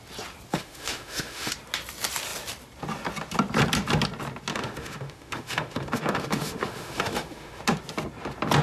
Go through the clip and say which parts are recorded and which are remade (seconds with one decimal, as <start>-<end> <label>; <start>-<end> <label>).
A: 0.0-0.5 recorded; 0.5-1.5 remade; 1.5-4.5 recorded; 4.5-7.6 remade; 7.6-8.6 recorded